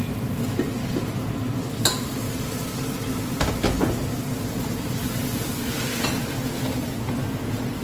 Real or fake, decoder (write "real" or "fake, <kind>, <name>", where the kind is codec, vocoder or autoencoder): real